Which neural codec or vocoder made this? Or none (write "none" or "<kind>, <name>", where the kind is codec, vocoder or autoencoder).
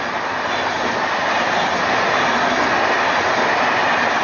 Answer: none